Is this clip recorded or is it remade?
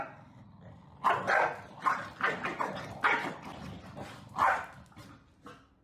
recorded